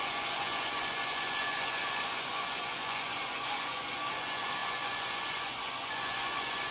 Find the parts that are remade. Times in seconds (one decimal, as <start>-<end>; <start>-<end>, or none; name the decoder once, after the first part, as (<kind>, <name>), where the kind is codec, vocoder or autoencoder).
0.0-6.7 (vocoder, Vocos)